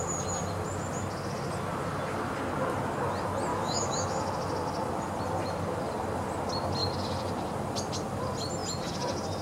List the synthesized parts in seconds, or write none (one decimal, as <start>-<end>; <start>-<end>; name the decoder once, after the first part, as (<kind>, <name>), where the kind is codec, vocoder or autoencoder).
3.5-4.2 (autoencoder, DAC-VAE)